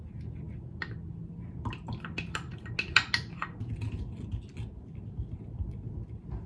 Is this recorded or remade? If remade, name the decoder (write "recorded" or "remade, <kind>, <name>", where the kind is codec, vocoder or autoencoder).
recorded